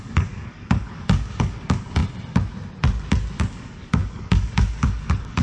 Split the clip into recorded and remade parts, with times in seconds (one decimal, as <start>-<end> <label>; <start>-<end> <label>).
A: 0.0-2.0 remade; 2.0-3.5 recorded; 3.5-5.4 remade